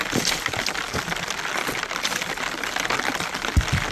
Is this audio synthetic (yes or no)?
no